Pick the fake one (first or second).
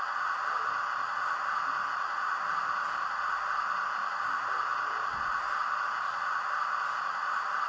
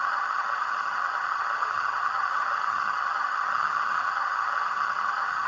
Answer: second